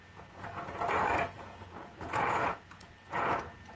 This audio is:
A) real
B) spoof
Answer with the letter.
B